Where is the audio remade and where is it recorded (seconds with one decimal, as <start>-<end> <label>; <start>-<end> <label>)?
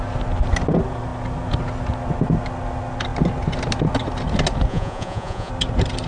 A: 0.0-4.7 recorded; 4.7-5.5 remade; 5.5-6.1 recorded